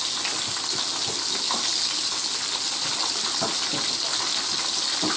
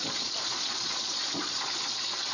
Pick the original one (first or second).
first